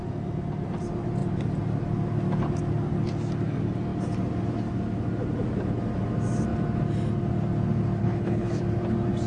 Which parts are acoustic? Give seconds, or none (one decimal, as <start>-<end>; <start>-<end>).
0.0-8.0; 8.6-9.3